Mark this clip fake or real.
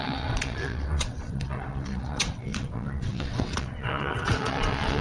fake